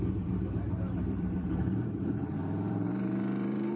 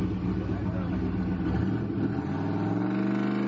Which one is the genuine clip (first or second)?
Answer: second